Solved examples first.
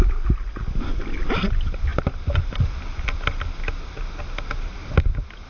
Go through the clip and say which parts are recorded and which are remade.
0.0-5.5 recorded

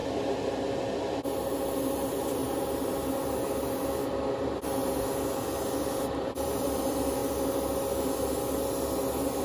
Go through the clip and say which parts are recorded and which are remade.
0.0-1.5 recorded; 1.5-2.4 remade; 2.4-6.4 recorded; 6.4-7.2 remade; 7.2-9.4 recorded